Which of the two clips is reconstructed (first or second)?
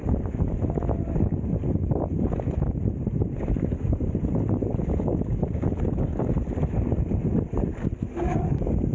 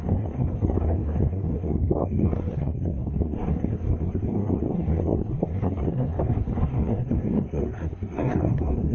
second